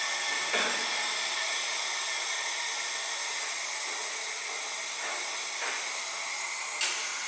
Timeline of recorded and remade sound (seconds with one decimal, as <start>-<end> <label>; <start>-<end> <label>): 0.0-1.4 recorded; 1.4-2.0 remade; 2.0-4.0 recorded; 4.0-4.6 remade; 4.6-7.3 recorded